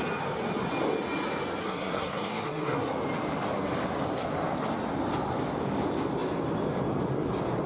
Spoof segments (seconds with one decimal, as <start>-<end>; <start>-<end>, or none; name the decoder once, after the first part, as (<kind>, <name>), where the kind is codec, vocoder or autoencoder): 1.6-2.9 (codec, SNAC)